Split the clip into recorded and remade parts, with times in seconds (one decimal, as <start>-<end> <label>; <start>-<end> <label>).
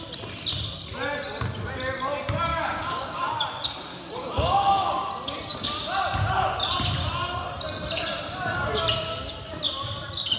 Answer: 0.0-2.5 recorded; 2.5-3.2 remade; 3.2-3.9 recorded; 3.9-5.1 remade; 5.1-10.4 recorded